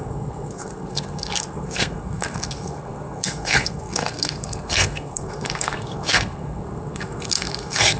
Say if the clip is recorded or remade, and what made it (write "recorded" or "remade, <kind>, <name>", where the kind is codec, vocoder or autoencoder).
remade, codec, SNAC